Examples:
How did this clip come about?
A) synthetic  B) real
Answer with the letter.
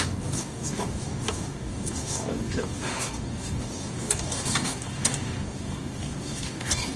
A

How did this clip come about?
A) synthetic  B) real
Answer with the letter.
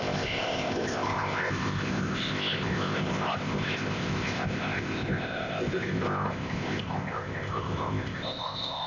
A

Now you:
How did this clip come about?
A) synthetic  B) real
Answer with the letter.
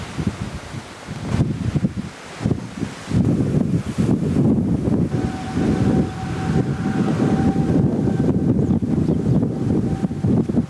B